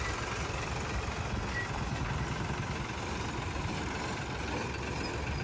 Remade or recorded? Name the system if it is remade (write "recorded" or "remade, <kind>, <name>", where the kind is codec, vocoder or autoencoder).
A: recorded